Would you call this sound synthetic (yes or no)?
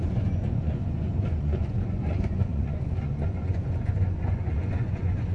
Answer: yes